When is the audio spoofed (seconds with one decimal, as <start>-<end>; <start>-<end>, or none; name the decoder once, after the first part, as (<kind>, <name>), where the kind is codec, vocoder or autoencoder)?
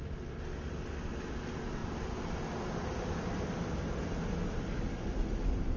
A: none